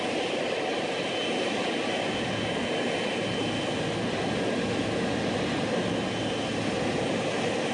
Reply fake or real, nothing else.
real